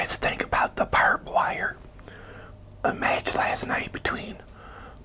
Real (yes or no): yes